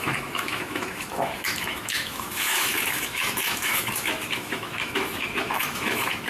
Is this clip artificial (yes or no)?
yes